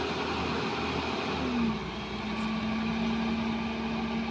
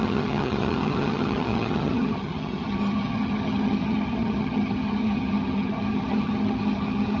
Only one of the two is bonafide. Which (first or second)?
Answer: first